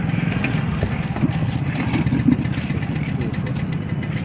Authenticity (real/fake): real